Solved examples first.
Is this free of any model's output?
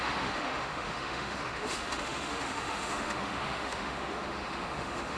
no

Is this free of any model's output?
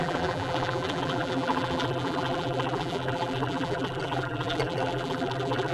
no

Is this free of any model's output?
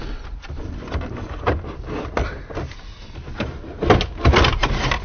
yes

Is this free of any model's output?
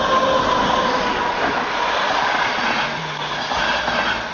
yes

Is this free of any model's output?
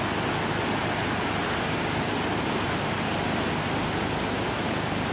yes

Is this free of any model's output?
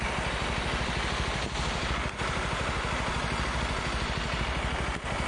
yes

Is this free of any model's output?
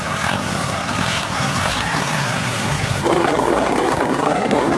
no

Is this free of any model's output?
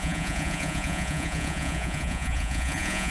no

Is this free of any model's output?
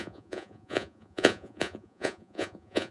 no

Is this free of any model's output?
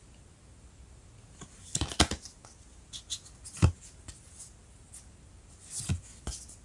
yes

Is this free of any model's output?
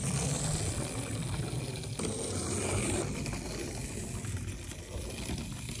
yes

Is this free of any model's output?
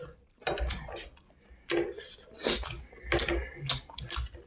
yes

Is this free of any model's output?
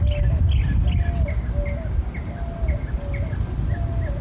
yes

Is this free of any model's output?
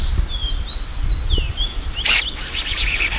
yes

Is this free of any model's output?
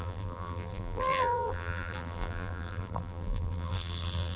no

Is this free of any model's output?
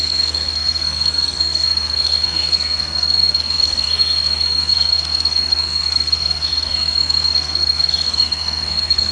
no